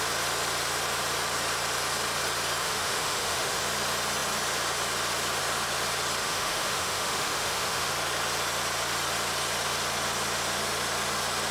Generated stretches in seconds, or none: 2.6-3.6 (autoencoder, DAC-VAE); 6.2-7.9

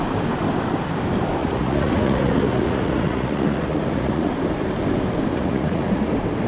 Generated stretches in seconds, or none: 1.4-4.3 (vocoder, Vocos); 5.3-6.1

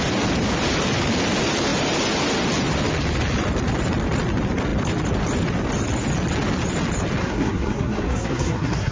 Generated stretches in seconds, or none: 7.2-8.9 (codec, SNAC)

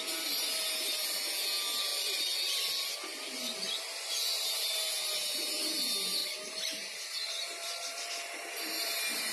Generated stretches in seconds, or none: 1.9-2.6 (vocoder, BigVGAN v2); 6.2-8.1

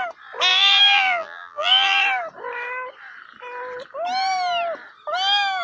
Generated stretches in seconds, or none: 0.5-2.0 (vocoder, BigVGAN v2)